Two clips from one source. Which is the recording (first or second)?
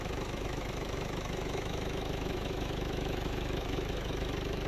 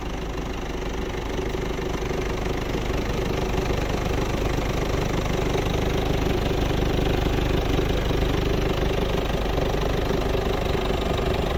second